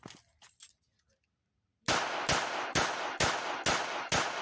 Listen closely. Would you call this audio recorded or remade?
recorded